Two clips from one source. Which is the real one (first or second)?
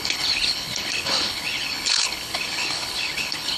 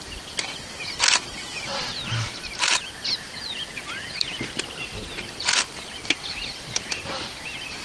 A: second